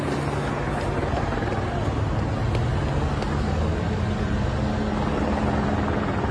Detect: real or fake real